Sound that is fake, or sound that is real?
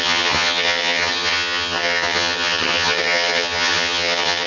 fake